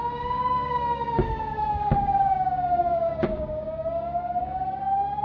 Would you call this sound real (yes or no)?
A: no